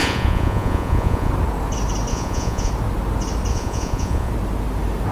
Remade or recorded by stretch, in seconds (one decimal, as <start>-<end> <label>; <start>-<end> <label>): 0.0-1.3 remade; 1.3-2.1 recorded; 2.1-2.7 remade; 2.7-3.5 recorded; 3.5-4.3 remade; 4.3-5.1 recorded